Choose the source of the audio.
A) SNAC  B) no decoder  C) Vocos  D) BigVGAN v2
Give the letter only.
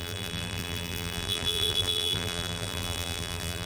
D